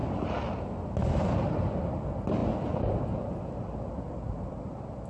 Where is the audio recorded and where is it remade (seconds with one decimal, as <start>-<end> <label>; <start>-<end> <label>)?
0.0-1.1 recorded; 1.1-5.1 remade